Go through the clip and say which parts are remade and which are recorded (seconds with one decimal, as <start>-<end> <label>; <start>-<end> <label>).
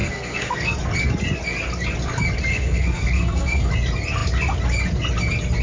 0.0-0.8 remade; 0.8-2.5 recorded; 2.5-3.7 remade; 3.7-5.6 recorded